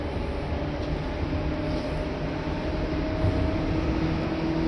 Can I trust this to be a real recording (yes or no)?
yes